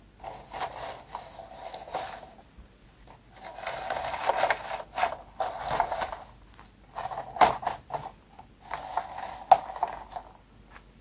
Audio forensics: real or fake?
real